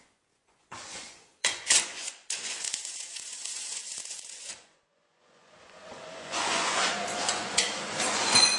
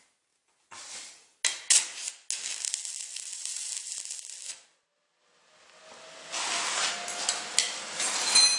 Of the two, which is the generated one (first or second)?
first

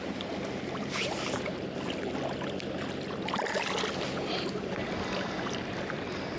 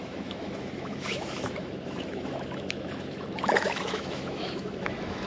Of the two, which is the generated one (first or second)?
second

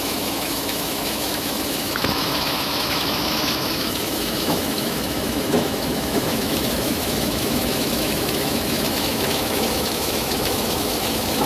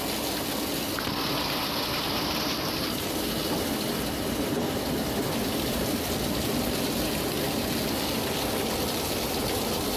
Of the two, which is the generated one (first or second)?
first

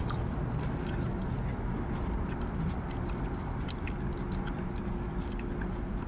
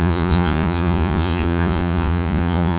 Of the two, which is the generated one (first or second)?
second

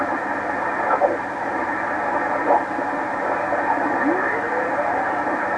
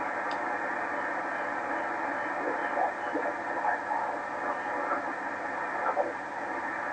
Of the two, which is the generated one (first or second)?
first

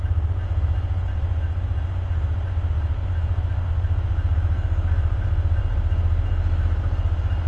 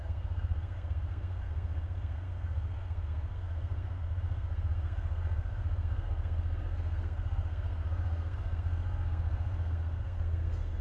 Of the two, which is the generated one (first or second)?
second